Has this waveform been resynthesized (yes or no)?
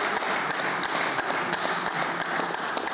no